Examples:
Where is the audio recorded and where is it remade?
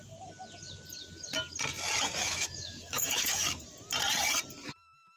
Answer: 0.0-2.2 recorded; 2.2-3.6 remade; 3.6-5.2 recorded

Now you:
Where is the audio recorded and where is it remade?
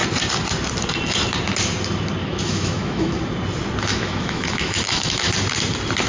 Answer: 0.0-2.2 recorded; 2.2-3.2 remade; 3.2-3.9 recorded; 3.9-5.3 remade; 5.3-6.1 recorded